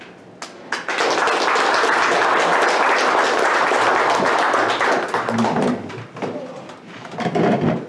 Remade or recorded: recorded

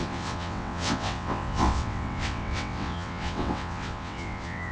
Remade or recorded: remade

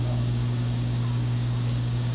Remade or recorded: remade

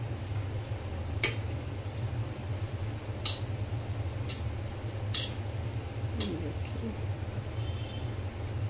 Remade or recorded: recorded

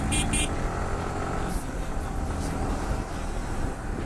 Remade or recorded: recorded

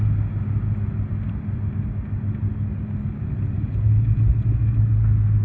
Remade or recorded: recorded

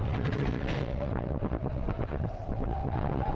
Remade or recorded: remade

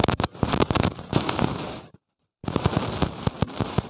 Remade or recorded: remade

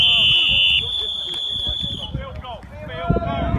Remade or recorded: recorded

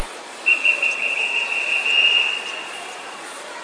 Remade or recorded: remade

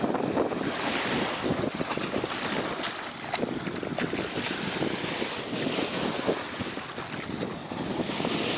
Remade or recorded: recorded